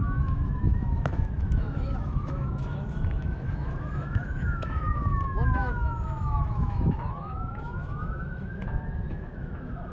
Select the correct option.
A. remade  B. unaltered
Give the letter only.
A